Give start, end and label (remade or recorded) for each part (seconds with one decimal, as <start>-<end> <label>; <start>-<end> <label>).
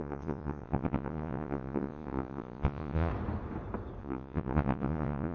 0.0-3.1 remade; 3.1-4.0 recorded; 4.0-5.3 remade